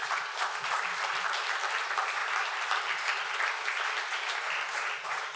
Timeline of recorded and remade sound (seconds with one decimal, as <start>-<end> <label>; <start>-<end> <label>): 0.0-5.4 recorded